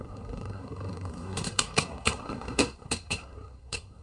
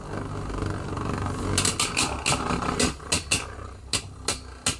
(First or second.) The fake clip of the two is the first